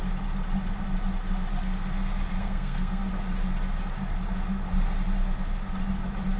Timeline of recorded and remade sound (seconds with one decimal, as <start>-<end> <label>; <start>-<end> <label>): 0.0-2.4 recorded; 2.4-3.1 remade; 3.1-6.4 recorded